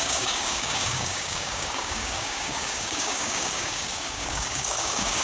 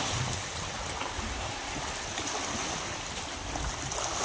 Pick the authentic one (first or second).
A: second